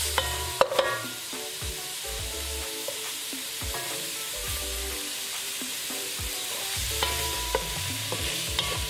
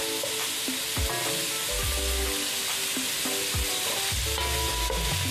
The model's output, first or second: first